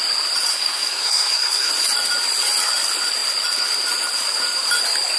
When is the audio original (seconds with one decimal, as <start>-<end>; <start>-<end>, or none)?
0.0-0.5; 1.7-5.2